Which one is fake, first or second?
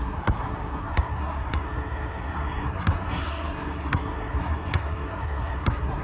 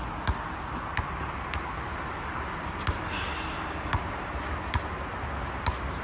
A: first